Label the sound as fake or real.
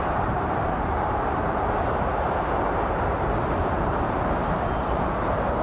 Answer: fake